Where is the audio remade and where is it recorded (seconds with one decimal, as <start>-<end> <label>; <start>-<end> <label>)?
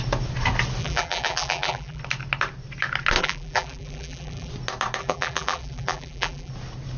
0.0-0.8 recorded; 0.8-2.0 remade; 2.0-3.2 recorded; 3.2-4.5 remade; 4.5-5.0 recorded; 5.0-6.5 remade; 6.5-7.0 recorded